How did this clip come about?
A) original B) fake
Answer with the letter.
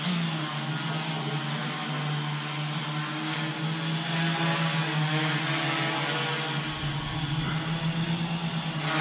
A